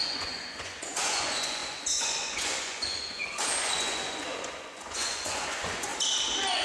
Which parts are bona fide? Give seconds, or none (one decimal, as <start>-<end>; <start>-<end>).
5.9-6.6